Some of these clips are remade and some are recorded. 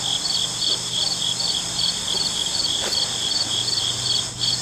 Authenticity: remade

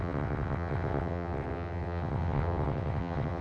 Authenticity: remade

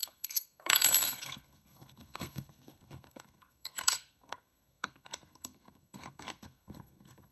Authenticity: remade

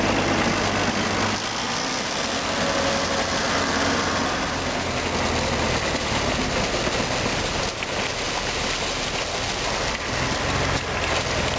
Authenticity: recorded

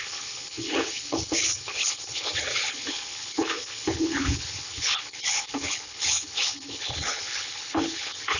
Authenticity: remade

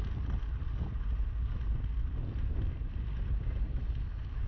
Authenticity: recorded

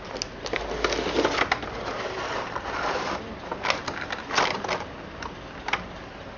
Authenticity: recorded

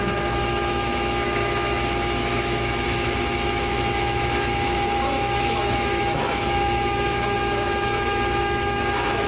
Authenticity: remade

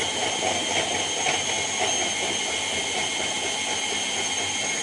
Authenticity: recorded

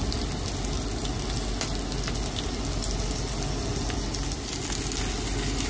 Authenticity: recorded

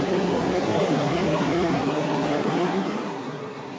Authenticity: remade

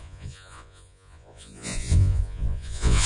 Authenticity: remade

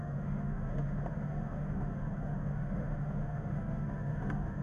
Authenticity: remade